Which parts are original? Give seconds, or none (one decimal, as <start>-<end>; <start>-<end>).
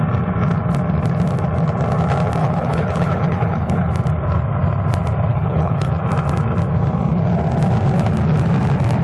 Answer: 0.0-2.4; 3.9-5.3; 5.9-9.0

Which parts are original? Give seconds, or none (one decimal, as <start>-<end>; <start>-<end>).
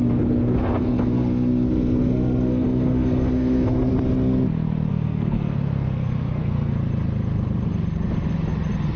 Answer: 3.9-4.9; 6.7-9.0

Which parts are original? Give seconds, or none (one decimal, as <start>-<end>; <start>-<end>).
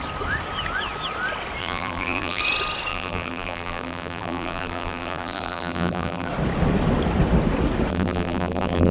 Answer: 0.0-1.6; 2.4-2.9; 6.3-7.9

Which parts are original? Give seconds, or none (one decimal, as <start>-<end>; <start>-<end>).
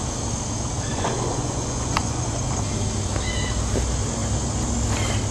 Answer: 0.0-0.9; 2.4-5.3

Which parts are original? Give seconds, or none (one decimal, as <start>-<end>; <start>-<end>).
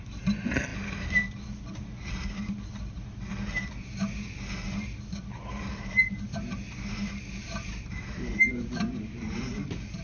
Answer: 0.0-7.4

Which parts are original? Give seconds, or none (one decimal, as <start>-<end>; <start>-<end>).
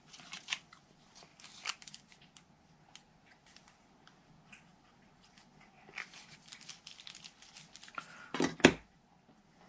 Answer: 0.0-9.7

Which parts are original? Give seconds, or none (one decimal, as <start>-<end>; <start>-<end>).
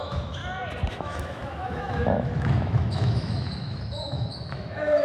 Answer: 0.4-0.9